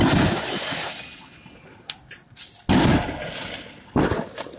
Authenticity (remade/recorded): recorded